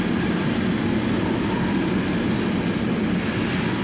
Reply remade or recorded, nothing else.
recorded